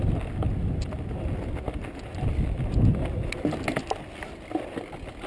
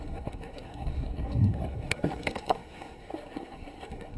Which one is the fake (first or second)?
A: second